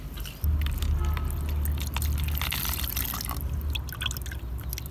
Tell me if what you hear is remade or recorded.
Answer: recorded